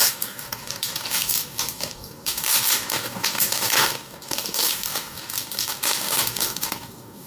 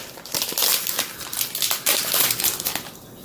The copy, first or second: first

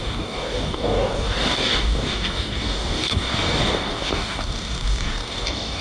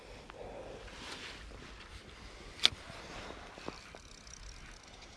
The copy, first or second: first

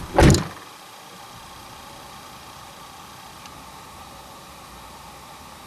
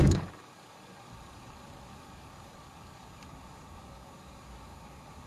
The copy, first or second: second